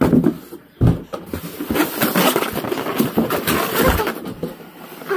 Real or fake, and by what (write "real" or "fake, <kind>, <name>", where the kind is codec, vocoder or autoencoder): real